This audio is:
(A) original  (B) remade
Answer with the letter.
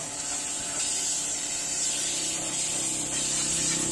A